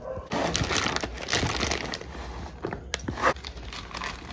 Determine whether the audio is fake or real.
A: real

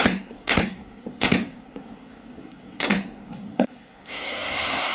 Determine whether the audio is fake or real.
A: fake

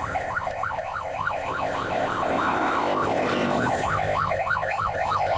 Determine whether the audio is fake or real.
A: fake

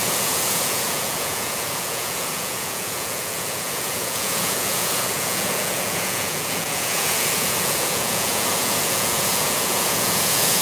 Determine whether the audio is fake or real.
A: fake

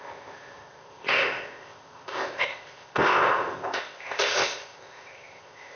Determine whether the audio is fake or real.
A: fake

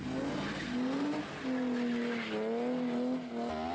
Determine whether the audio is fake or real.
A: real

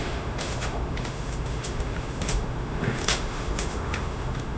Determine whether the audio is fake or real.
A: fake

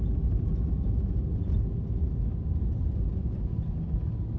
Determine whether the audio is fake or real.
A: real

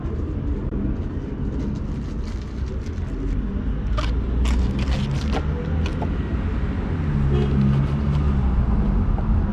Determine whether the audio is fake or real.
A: real